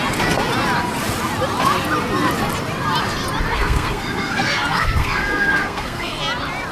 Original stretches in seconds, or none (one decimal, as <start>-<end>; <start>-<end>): 0.0-3.5; 6.2-6.7